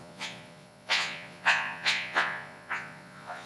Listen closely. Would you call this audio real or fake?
fake